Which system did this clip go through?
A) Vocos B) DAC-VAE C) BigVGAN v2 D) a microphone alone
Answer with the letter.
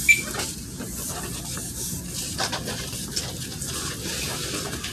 D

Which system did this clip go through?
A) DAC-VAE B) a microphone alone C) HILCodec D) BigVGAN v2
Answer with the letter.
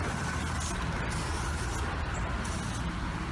B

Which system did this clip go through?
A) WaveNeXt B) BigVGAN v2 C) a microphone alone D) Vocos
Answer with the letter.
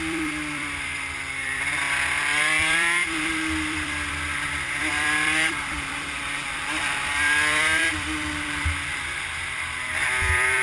B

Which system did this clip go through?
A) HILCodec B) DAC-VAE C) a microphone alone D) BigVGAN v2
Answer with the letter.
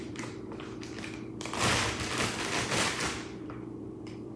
D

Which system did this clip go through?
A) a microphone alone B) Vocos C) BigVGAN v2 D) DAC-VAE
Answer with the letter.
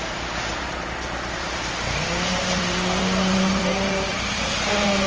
C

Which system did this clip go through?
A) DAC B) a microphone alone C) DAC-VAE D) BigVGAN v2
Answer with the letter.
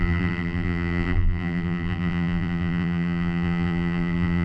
D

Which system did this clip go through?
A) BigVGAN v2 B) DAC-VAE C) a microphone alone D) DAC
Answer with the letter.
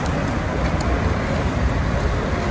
C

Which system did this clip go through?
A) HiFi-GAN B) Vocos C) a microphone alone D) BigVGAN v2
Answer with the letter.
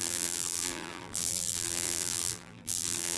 D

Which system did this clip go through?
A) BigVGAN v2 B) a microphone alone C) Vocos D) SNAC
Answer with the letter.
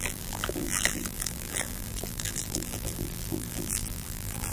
A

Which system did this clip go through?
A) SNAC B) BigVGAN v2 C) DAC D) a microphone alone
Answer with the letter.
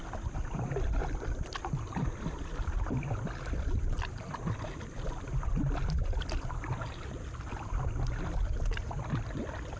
D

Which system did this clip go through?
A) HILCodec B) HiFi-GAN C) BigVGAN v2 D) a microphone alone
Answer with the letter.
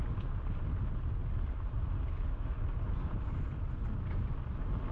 D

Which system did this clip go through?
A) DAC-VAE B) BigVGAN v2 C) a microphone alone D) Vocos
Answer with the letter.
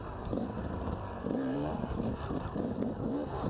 B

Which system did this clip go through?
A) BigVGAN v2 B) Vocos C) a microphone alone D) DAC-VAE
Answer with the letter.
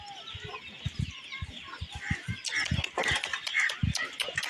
C